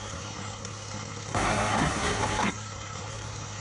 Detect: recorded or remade remade